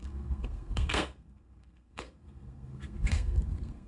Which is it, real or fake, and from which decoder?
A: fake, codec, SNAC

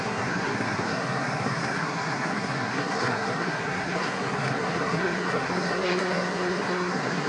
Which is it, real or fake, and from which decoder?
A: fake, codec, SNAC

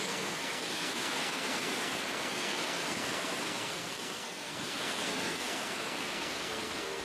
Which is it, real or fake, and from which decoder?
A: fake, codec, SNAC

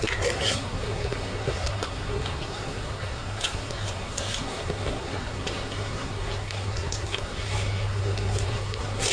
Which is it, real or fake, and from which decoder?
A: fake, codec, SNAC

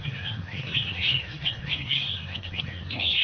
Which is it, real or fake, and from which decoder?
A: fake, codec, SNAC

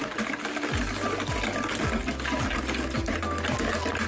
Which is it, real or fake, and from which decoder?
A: real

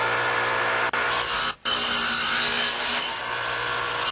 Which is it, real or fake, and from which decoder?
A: real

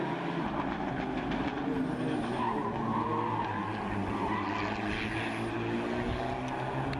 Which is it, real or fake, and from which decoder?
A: real